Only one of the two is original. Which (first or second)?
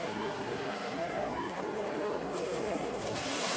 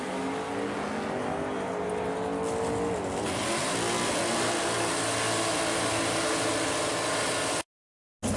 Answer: second